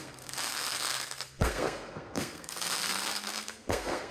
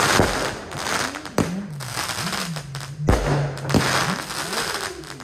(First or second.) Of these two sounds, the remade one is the first